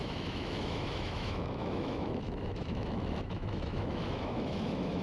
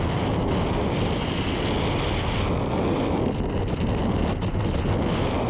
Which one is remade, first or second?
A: first